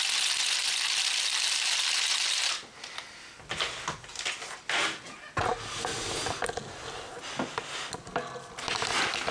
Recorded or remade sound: recorded